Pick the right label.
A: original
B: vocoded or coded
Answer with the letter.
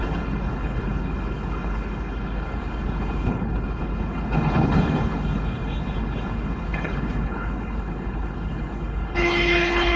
B